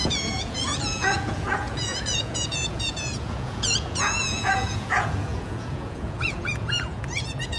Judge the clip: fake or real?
fake